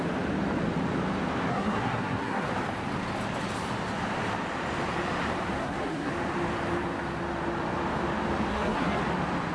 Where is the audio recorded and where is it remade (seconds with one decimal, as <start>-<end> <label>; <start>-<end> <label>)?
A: 0.0-1.5 recorded; 1.5-2.5 remade; 2.5-5.6 recorded; 5.6-6.1 remade; 6.1-8.5 recorded; 8.5-9.0 remade; 9.0-9.5 recorded

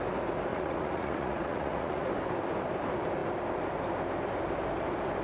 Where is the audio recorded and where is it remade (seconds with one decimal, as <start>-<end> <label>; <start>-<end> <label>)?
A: 0.0-0.5 recorded; 0.5-2.1 remade; 2.1-5.2 recorded